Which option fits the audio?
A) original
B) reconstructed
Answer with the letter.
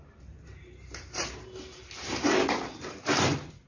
A